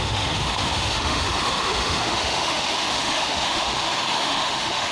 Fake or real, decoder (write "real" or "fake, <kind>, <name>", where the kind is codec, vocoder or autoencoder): fake, autoencoder, DAC-VAE